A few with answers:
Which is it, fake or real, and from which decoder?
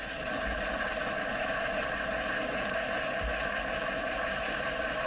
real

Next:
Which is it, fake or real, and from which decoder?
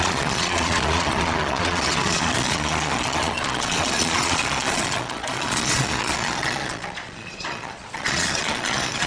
fake, vocoder, Vocos